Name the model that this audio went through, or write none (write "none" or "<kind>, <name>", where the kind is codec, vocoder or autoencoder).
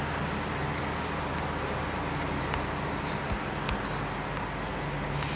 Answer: none